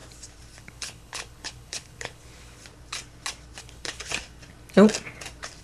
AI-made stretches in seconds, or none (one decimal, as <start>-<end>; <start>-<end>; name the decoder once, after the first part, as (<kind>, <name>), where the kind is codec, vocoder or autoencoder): 0.6-2.6 (codec, HILCodec); 3.6-4.1